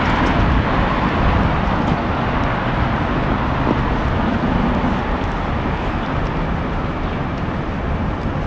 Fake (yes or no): no